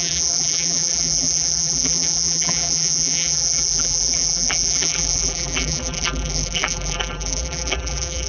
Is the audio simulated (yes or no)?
yes